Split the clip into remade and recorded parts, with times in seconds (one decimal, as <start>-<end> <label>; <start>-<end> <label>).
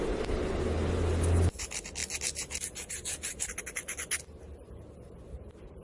0.0-5.8 recorded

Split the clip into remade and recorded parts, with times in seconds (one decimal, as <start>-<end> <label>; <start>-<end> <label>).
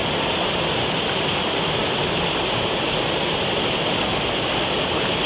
0.0-5.3 recorded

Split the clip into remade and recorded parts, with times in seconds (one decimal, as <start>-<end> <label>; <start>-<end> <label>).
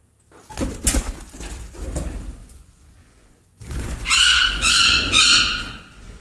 0.0-2.4 recorded; 2.4-6.2 remade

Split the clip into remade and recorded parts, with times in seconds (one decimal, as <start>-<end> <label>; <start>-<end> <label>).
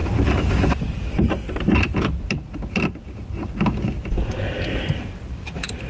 0.0-3.5 remade; 3.5-5.9 recorded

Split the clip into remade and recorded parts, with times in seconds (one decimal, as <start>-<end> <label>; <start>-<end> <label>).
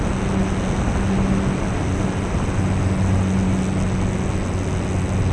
0.0-5.3 recorded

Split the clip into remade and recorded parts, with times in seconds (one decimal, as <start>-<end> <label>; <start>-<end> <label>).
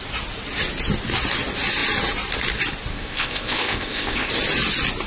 0.0-2.9 recorded; 2.9-4.3 remade; 4.3-5.1 recorded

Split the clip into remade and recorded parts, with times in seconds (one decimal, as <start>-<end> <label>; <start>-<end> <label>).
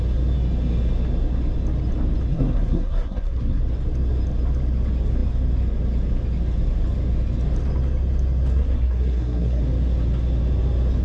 0.0-2.3 recorded; 2.3-3.6 remade; 3.6-8.5 recorded; 8.5-9.6 remade; 9.6-11.0 recorded